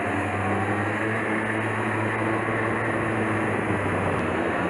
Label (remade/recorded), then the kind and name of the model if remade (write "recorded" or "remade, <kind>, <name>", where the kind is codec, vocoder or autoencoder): recorded